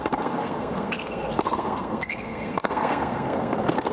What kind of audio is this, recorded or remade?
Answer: remade